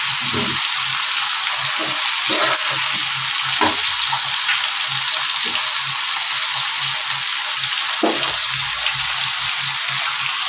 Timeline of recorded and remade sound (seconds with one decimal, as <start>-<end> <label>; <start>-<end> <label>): 0.0-10.5 recorded